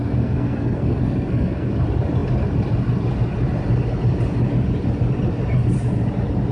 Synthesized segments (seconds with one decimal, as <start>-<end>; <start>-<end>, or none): 0.0-1.7